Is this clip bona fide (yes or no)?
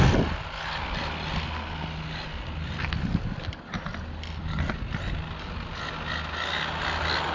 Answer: yes